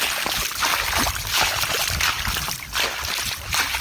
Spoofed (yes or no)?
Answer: no